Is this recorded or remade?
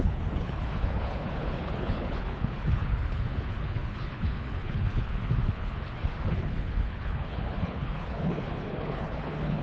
remade